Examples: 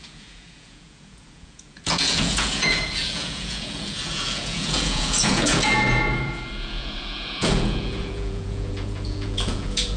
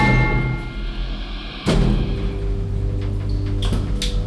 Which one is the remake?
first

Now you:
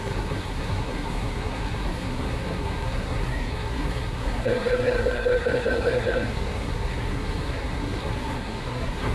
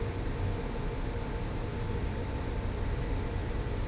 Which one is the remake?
first